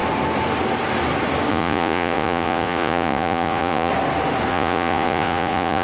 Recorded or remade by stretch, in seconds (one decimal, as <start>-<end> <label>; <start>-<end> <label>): 0.0-1.5 recorded; 1.5-3.9 remade; 3.9-4.5 recorded; 4.5-5.8 remade